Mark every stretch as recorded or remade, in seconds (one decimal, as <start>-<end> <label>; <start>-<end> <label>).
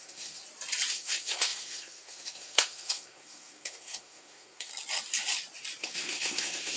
0.0-0.4 remade; 0.4-0.9 recorded; 0.9-4.7 remade; 4.7-5.8 recorded; 5.8-6.8 remade